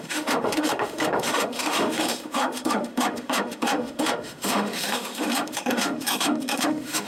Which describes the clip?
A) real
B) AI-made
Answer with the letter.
B